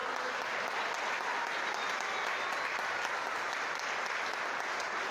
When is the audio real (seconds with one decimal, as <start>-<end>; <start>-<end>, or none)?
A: 0.0-5.1